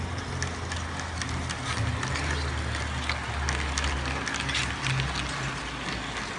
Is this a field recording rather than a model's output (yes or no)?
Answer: yes